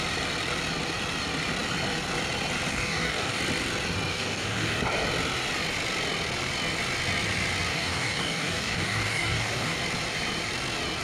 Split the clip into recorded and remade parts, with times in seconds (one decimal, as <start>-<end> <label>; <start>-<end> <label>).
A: 0.0-2.7 recorded; 2.7-3.4 remade; 3.4-4.1 recorded; 4.1-4.8 remade; 4.8-7.7 recorded; 7.7-9.8 remade; 9.8-11.0 recorded